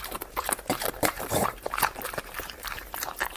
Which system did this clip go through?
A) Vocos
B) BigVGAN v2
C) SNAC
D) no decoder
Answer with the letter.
B